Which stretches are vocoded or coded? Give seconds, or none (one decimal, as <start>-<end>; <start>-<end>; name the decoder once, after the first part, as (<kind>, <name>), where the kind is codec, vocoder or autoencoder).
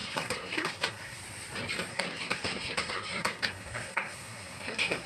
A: 0.0-1.2 (codec, SNAC); 1.9-5.1